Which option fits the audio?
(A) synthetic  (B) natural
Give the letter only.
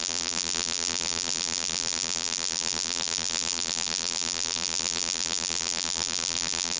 A